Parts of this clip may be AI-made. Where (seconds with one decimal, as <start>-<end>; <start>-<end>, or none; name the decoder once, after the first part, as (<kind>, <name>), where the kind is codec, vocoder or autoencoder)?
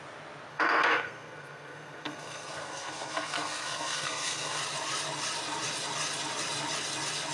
0.5-4.6 (codec, SNAC)